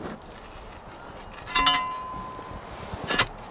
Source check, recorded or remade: recorded